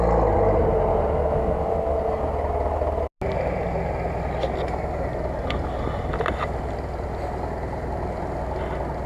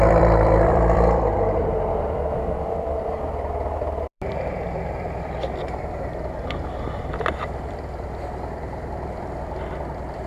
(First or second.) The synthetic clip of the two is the second